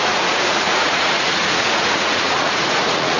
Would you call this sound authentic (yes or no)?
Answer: no